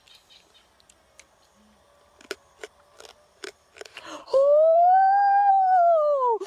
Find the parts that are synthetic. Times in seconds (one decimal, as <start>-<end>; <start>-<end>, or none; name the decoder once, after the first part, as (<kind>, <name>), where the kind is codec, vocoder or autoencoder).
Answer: 4.2-5.5 (codec, SNAC)